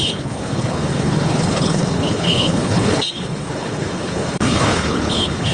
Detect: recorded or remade remade